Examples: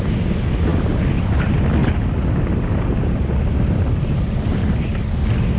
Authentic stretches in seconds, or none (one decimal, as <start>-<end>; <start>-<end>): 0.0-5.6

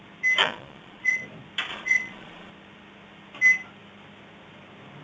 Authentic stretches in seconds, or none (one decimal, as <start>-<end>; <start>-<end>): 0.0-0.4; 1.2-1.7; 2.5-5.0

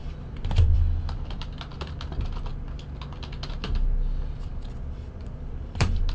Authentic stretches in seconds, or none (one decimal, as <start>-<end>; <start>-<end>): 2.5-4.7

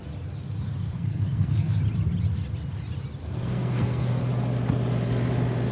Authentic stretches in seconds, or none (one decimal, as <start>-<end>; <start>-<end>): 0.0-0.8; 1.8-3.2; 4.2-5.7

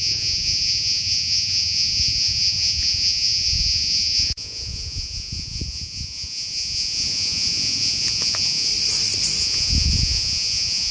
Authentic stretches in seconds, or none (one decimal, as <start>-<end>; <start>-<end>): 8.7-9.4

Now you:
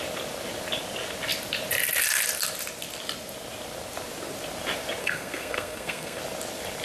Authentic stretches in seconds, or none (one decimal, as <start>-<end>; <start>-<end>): 0.0-5.0; 6.2-6.8

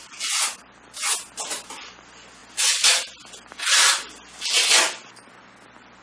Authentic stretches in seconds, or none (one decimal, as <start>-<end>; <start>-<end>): 0.0-6.0

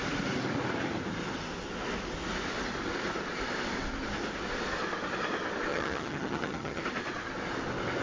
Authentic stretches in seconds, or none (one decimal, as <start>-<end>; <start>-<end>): 0.0-5.7; 6.8-8.0